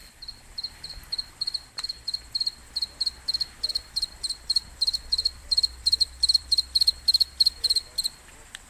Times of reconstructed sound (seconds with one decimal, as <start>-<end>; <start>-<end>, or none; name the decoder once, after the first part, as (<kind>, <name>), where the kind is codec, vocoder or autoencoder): 1.3-2.6 (vocoder, BigVGAN v2); 3.7-8.7